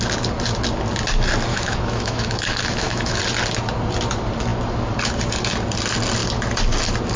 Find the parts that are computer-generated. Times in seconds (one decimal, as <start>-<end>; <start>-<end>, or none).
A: 1.5-3.2